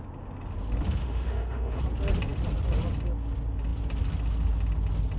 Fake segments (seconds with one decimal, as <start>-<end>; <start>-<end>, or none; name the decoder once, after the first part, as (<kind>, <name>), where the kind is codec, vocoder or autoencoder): 1.0-1.8 (autoencoder, DAC-VAE)